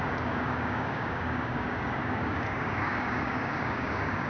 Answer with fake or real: fake